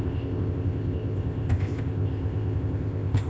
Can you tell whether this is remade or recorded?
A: remade